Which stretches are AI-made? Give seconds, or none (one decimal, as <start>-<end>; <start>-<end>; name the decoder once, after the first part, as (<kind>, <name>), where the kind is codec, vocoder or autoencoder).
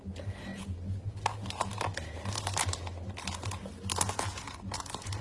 none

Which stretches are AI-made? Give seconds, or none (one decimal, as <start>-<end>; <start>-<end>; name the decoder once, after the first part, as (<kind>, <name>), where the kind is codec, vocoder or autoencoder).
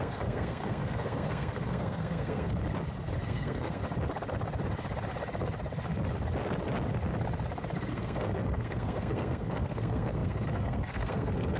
0.0-2.6 (codec, SNAC); 3.2-3.8; 7.9-11.6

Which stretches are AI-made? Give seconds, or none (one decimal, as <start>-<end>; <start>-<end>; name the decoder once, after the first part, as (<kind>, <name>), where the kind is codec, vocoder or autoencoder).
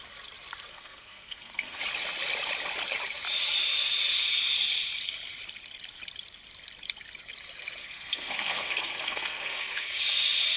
0.7-1.8 (codec, SNAC); 7.8-9.9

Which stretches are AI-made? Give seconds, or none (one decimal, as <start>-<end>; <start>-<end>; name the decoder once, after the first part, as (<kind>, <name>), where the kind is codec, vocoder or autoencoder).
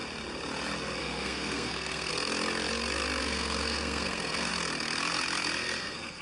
1.0-2.1 (codec, SNAC); 3.2-4.5; 5.8-6.2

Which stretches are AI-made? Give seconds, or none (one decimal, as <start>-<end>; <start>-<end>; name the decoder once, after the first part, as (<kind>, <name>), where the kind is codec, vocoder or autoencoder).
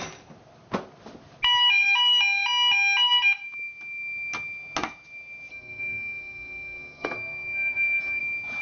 5.5-8.2 (codec, SNAC)